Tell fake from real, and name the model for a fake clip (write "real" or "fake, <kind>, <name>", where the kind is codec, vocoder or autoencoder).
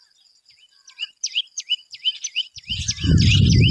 real